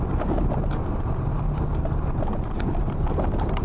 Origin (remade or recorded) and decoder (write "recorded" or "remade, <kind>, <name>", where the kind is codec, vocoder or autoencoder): recorded